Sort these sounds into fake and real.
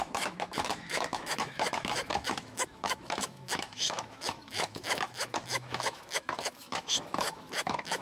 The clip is fake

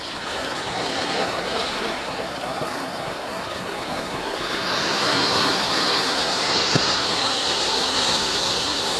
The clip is fake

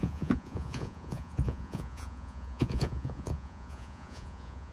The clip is fake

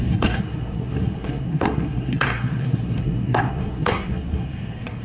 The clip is fake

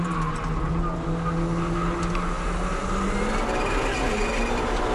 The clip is real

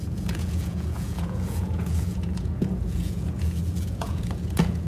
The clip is fake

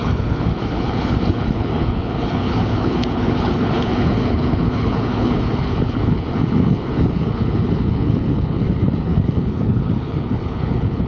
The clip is fake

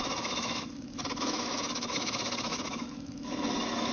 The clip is fake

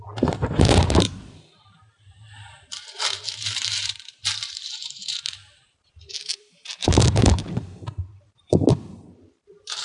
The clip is fake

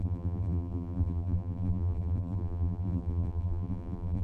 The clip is fake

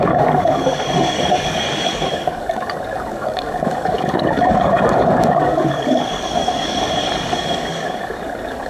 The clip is fake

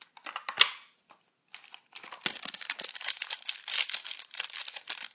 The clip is real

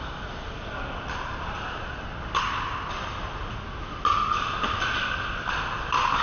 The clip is real